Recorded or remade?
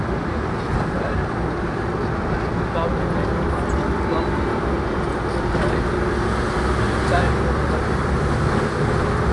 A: recorded